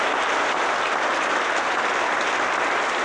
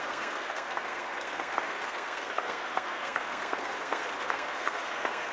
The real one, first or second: first